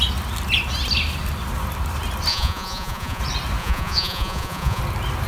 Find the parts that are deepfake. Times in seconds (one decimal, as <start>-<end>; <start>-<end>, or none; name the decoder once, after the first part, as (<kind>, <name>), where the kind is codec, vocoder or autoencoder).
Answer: 2.3-3.2 (vocoder, Vocos); 3.6-4.8